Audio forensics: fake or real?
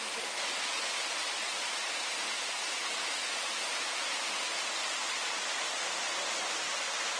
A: real